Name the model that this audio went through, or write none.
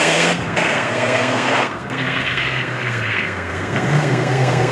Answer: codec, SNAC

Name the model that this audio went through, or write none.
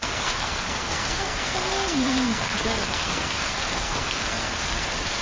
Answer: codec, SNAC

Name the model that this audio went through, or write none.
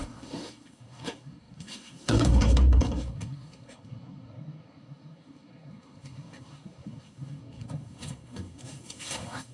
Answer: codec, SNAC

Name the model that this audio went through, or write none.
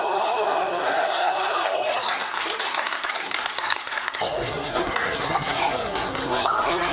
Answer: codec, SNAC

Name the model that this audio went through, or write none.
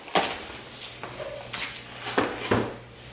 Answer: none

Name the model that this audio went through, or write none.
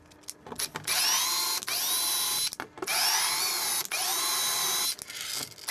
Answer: none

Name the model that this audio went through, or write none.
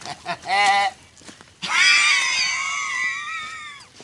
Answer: none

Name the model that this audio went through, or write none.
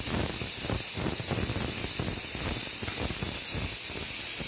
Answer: none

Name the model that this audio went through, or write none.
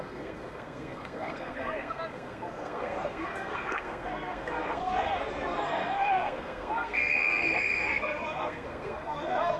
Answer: codec, SNAC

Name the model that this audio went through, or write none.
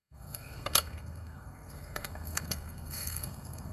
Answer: codec, SNAC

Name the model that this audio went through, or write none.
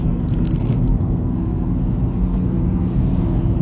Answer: codec, SNAC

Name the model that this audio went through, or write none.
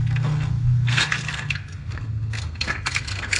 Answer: codec, SNAC